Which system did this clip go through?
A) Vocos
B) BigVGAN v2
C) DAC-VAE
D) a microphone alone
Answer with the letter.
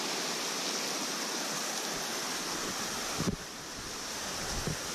D